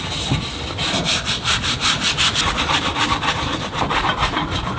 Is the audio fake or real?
real